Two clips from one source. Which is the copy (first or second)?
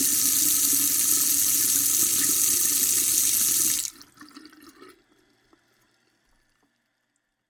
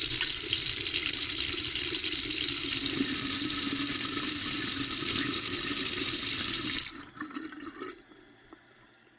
second